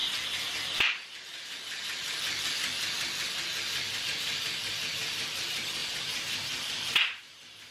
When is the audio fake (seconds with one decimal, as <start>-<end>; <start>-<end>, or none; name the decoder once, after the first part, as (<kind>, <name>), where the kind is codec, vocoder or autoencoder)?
none